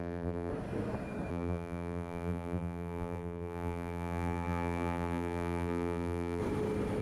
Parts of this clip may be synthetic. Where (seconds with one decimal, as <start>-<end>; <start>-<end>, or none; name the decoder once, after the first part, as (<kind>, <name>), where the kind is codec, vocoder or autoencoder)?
0.0-0.5 (vocoder, BigVGAN v2); 1.3-6.4